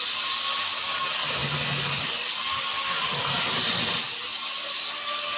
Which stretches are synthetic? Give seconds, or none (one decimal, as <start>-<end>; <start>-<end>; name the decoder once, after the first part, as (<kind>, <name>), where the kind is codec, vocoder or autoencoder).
none